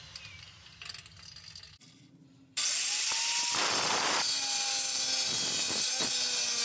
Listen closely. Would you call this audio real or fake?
real